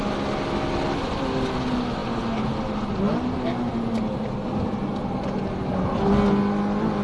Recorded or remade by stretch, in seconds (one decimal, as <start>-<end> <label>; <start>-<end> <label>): 0.0-7.0 recorded